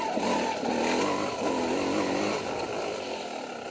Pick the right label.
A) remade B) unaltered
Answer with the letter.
B